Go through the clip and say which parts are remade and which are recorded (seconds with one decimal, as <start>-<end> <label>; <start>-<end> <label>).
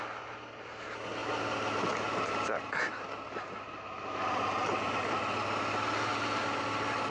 0.0-7.1 recorded